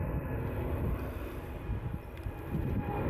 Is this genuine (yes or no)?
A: yes